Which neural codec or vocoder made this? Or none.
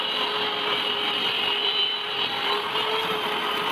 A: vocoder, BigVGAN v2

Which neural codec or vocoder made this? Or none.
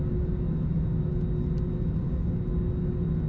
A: none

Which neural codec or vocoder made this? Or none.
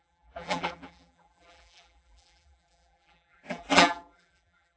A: vocoder, BigVGAN v2